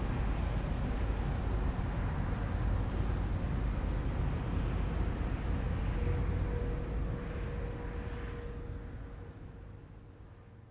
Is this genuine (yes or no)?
yes